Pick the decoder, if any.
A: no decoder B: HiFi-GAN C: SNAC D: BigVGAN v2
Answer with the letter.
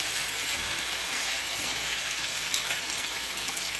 C